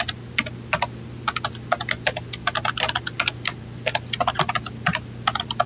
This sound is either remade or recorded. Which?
recorded